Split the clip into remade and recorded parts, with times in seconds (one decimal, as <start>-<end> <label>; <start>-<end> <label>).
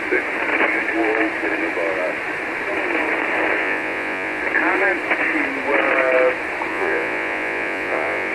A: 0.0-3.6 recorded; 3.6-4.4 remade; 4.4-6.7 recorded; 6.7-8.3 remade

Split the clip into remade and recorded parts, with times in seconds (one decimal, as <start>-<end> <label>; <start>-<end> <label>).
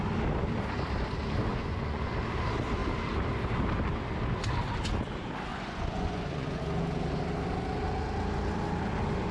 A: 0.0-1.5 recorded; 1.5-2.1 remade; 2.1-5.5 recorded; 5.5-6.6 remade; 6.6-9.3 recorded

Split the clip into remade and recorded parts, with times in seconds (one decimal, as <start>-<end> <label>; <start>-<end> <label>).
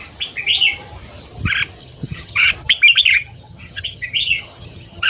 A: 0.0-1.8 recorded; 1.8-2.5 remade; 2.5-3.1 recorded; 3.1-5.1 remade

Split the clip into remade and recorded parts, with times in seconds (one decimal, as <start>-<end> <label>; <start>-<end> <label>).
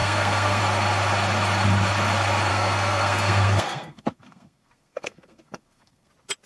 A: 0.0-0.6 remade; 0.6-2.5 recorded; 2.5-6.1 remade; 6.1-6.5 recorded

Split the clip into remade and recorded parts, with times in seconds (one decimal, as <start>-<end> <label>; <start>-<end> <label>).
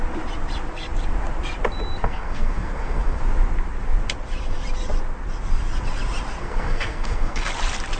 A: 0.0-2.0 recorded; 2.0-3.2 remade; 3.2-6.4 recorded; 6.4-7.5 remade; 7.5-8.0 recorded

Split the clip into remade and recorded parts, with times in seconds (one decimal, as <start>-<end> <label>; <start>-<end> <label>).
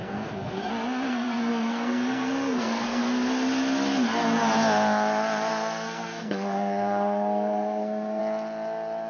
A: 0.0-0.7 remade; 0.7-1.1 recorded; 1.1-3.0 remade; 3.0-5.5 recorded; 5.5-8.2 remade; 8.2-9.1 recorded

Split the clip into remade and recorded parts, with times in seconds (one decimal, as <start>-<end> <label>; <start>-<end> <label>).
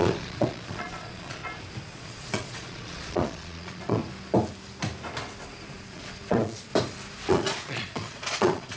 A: 0.0-1.4 remade; 1.4-1.9 recorded; 1.9-4.0 remade; 4.0-5.7 recorded; 5.7-6.7 remade; 6.7-7.3 recorded; 7.3-8.8 remade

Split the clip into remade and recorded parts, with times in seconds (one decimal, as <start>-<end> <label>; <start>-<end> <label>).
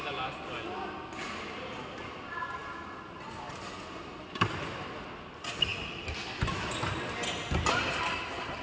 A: 0.0-8.6 recorded